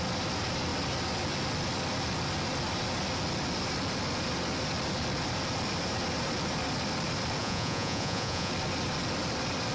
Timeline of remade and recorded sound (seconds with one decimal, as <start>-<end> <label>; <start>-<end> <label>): 0.0-7.4 recorded; 7.4-8.5 remade; 8.5-9.7 recorded